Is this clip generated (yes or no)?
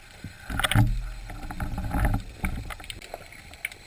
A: no